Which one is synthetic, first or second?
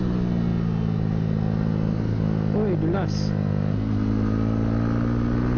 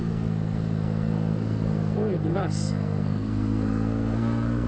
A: second